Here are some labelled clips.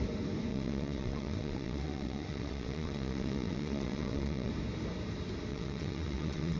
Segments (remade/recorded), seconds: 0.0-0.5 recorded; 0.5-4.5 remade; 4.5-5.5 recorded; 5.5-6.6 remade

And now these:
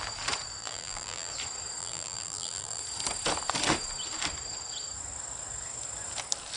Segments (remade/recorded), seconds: 0.0-0.6 recorded; 0.6-1.3 remade; 1.3-1.8 recorded; 1.8-2.8 remade; 2.8-6.6 recorded

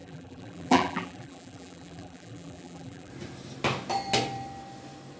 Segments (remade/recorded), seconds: 0.0-3.1 remade; 3.1-5.2 recorded

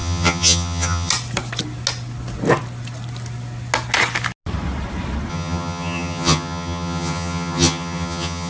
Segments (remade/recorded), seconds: 0.0-1.1 remade; 1.1-5.3 recorded; 5.3-8.5 remade

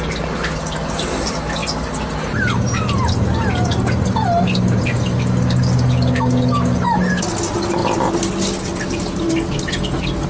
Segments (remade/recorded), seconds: 0.0-10.3 recorded